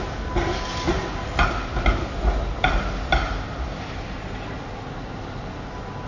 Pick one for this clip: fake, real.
real